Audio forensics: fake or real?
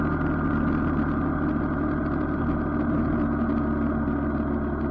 real